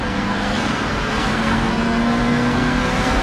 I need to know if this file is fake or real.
fake